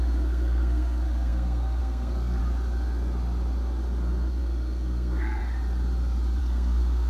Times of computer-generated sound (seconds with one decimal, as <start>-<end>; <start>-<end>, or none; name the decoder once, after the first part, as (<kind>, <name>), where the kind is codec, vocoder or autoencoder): 0.0-2.4 (codec, SNAC); 4.4-5.4; 6.4-7.1